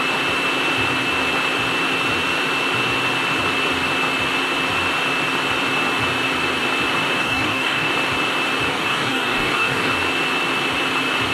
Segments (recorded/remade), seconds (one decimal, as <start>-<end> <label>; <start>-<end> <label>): 0.0-7.2 recorded; 7.2-7.9 remade; 7.9-8.7 recorded; 8.7-9.9 remade; 9.9-11.3 recorded